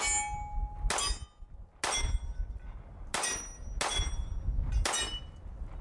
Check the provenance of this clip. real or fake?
real